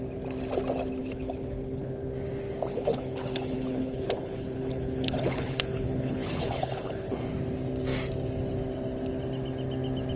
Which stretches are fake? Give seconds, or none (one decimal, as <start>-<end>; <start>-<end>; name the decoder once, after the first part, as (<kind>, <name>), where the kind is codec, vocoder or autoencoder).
1.0-1.9 (codec, HILCodec); 2.7-7.1